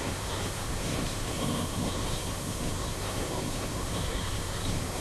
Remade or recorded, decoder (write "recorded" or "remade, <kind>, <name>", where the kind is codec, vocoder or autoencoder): remade, codec, SNAC